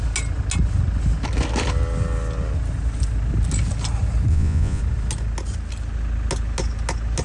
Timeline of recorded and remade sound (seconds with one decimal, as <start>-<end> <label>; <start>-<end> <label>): 0.0-4.3 recorded; 4.3-4.8 remade; 4.8-7.2 recorded